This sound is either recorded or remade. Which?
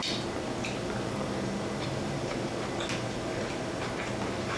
recorded